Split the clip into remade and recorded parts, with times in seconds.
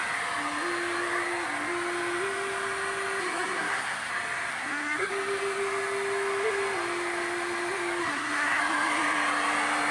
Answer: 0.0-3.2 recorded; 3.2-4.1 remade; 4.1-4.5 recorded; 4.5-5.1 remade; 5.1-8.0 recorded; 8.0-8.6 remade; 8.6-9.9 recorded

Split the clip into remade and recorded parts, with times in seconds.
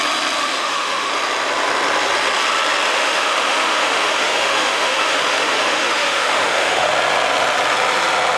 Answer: 0.0-0.4 recorded; 0.4-1.1 remade; 1.1-2.9 recorded; 2.9-6.9 remade; 6.9-8.4 recorded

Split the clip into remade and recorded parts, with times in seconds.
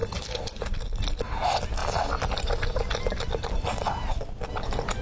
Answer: 0.0-5.0 recorded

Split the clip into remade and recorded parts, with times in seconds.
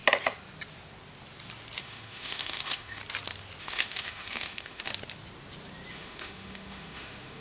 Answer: 0.0-1.8 recorded; 1.8-3.0 remade; 3.0-3.6 recorded; 3.6-4.9 remade; 4.9-5.9 recorded; 5.9-7.4 remade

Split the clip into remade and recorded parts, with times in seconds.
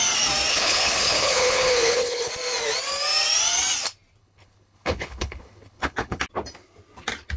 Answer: 0.0-0.5 recorded; 0.5-2.3 remade; 2.3-4.2 recorded; 4.2-6.2 remade; 6.2-7.4 recorded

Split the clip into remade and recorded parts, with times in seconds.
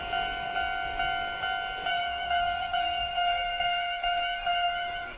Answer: 0.0-1.9 recorded; 1.9-5.2 remade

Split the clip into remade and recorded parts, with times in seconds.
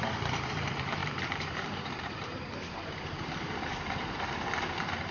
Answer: 0.0-5.1 remade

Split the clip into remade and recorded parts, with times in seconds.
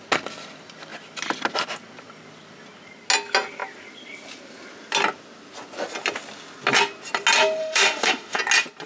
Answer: 0.0-7.6 recorded; 7.6-8.4 remade; 8.4-8.9 recorded